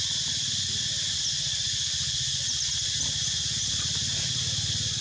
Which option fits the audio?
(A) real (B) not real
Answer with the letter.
A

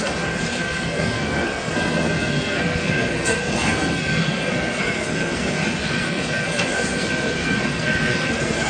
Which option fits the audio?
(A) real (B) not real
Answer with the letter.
B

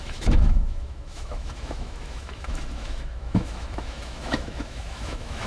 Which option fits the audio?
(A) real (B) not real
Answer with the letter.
B